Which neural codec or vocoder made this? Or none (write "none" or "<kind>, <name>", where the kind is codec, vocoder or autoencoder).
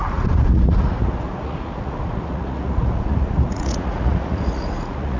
vocoder, Vocos